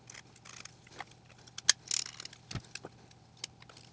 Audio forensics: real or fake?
real